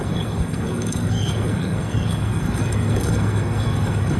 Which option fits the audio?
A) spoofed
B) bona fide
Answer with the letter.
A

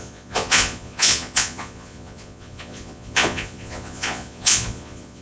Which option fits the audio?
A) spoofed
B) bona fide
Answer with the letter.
A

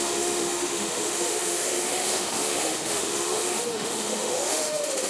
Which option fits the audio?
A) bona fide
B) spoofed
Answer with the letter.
B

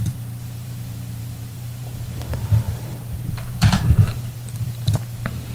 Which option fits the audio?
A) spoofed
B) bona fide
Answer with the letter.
A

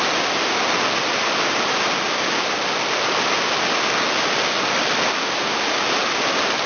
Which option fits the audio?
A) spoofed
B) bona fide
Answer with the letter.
B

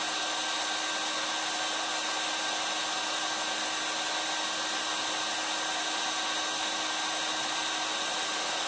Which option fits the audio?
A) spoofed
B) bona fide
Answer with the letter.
B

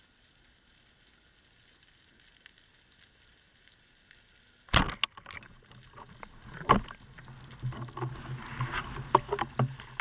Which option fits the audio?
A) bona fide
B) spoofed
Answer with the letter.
A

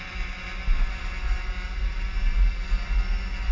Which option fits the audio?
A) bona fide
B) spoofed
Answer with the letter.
A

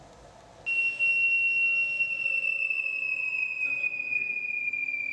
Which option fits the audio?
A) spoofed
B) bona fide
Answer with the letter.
B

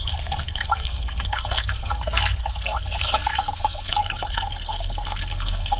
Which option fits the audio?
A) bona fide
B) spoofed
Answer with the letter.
B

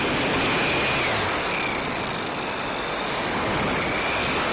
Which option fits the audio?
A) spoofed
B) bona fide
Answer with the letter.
B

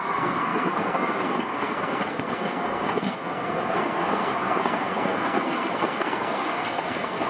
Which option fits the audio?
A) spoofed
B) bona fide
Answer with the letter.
A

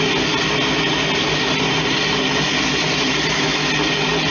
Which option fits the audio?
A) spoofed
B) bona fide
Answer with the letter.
B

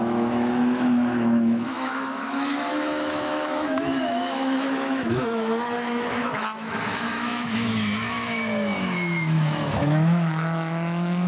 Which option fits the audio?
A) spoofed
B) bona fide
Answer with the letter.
A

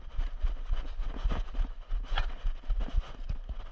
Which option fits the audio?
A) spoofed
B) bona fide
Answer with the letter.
B